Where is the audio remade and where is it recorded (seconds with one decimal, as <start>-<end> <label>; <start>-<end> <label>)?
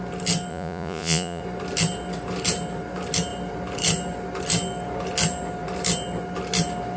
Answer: 0.0-0.5 recorded; 0.5-1.4 remade; 1.4-7.0 recorded